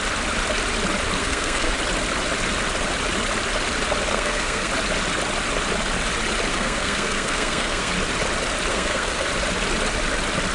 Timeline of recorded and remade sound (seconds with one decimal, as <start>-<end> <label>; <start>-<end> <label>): 0.0-1.2 recorded; 1.2-1.7 remade; 1.7-4.1 recorded; 4.1-4.7 remade; 4.7-6.5 recorded; 6.5-7.9 remade; 7.9-8.7 recorded; 8.7-9.3 remade; 9.3-10.5 recorded